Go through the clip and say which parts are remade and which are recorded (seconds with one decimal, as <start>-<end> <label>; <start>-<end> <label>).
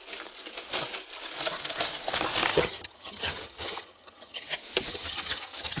0.0-2.5 recorded; 2.5-4.5 remade; 4.5-4.9 recorded; 4.9-5.8 remade